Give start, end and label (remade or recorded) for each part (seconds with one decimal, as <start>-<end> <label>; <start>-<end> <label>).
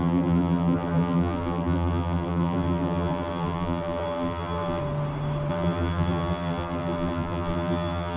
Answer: 0.0-4.8 remade; 4.8-5.5 recorded; 5.5-8.2 remade